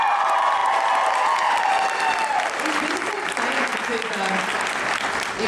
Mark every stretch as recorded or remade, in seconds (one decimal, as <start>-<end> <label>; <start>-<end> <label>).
0.0-5.5 recorded